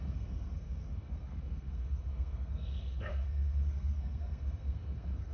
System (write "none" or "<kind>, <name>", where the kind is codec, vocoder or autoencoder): codec, SNAC